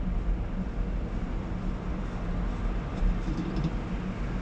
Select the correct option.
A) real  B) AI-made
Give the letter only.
A